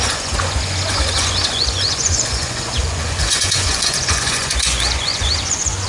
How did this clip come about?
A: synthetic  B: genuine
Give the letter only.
A